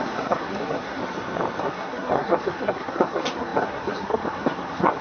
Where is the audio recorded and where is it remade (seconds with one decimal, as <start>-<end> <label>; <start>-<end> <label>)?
0.0-1.0 remade; 1.0-1.6 recorded; 1.6-5.0 remade